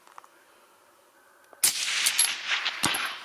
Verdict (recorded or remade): recorded